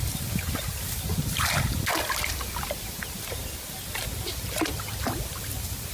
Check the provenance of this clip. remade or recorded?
recorded